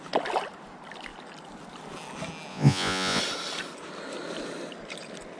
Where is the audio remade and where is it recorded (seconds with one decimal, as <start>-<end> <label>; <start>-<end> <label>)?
0.0-2.5 recorded; 2.5-3.2 remade; 3.2-5.4 recorded